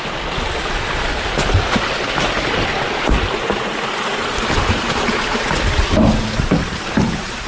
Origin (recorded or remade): recorded